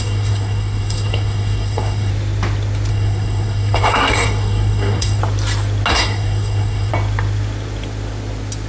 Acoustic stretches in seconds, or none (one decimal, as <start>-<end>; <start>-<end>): 2.1-2.9; 5.2-5.9; 6.9-8.7